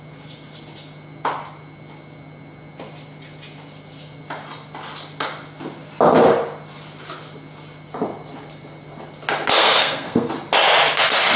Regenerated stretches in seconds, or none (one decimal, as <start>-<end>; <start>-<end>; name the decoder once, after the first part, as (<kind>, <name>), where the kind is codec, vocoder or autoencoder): 9.6-10.3 (codec, SNAC)

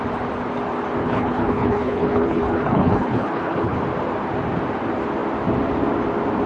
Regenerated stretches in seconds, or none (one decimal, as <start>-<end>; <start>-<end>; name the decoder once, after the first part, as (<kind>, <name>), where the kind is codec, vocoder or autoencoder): 1.0-3.8 (codec, HILCodec)